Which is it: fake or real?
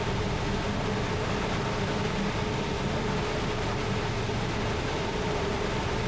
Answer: real